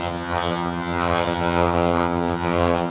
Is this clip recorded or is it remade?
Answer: remade